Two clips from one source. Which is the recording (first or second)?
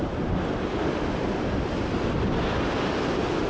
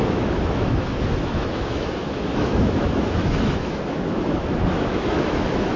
first